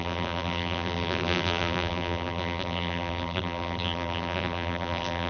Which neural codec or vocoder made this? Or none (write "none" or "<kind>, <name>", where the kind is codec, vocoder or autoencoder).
vocoder, BigVGAN v2